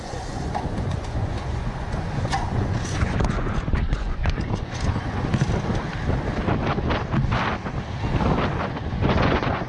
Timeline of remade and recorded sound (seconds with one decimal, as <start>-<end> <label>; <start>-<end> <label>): 0.0-5.3 remade; 5.3-8.5 recorded; 8.5-9.7 remade

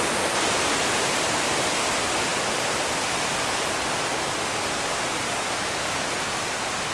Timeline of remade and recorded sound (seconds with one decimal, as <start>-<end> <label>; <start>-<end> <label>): 0.0-6.9 recorded

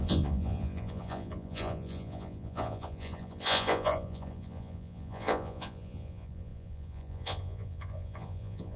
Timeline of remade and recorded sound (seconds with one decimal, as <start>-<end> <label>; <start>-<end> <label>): 0.0-8.8 remade

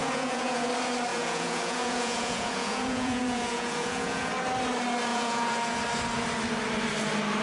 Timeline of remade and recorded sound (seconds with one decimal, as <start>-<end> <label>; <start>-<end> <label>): 0.0-0.7 remade; 0.7-1.1 recorded; 1.1-4.3 remade; 4.3-5.1 recorded; 5.1-5.8 remade; 5.8-7.4 recorded

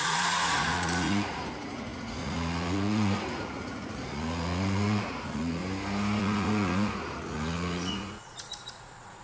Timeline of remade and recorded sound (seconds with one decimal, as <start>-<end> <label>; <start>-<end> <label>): 0.0-5.6 remade; 5.6-6.2 recorded; 6.2-9.2 remade